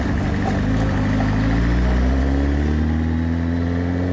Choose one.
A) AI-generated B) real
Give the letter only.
B